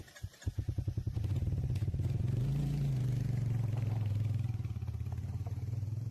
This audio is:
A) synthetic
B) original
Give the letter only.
A